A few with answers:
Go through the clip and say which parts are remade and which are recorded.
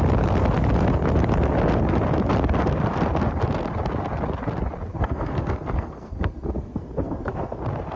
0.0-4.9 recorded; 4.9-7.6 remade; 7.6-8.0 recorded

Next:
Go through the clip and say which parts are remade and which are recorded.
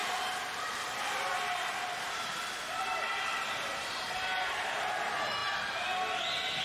0.0-4.0 remade; 4.0-6.6 recorded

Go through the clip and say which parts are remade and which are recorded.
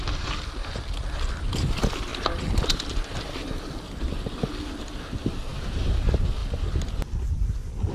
0.0-7.9 recorded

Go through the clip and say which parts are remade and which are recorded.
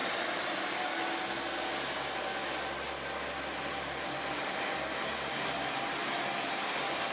0.0-7.1 recorded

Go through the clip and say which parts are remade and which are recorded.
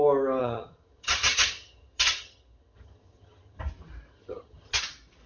0.0-0.4 recorded; 0.4-3.6 remade; 3.6-4.1 recorded; 4.1-4.8 remade; 4.8-5.3 recorded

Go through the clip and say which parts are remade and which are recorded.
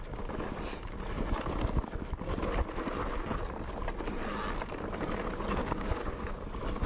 0.0-5.6 recorded; 5.6-6.4 remade; 6.4-6.9 recorded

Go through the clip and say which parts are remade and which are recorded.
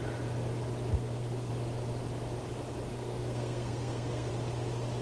0.0-0.9 recorded; 0.9-1.5 remade; 1.5-2.9 recorded; 2.9-4.3 remade; 4.3-5.0 recorded